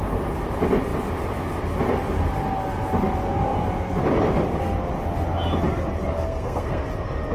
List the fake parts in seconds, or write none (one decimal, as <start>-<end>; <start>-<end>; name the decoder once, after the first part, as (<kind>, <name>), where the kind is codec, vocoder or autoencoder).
6.1-6.8 (codec, SNAC)